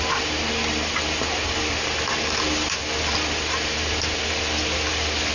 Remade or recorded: recorded